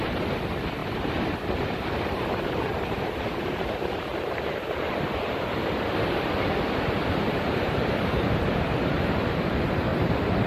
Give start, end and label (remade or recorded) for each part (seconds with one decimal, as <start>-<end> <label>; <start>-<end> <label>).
0.0-4.1 remade; 4.1-7.1 recorded; 7.1-10.5 remade